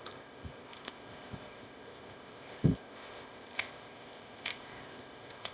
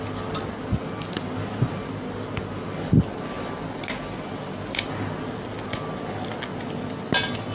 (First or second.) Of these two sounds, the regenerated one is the first